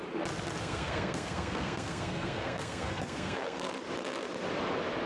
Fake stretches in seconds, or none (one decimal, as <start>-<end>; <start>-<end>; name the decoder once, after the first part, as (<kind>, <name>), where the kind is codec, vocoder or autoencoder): 0.6-3.7 (codec, SNAC)